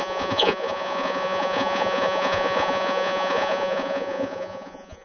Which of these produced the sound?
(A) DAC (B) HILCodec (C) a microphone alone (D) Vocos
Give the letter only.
D